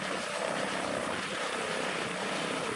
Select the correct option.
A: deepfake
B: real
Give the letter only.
B